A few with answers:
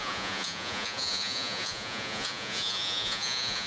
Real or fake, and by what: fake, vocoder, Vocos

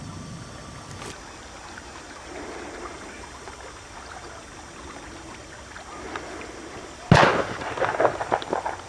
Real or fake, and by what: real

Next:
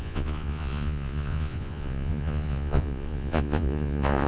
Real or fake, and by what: fake, vocoder, Vocos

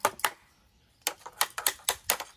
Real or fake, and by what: real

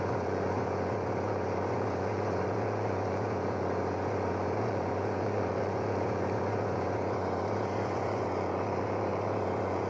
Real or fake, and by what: fake, vocoder, Vocos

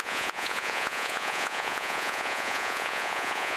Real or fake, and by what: fake, vocoder, Vocos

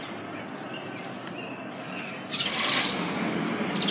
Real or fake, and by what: real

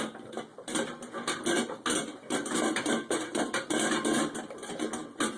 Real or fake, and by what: real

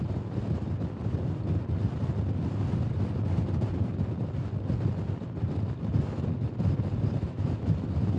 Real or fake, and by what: real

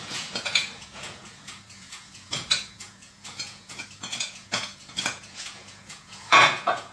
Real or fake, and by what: fake, vocoder, Vocos